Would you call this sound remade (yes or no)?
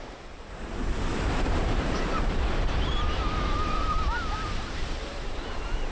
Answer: yes